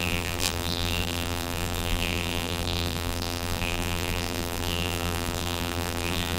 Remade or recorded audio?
remade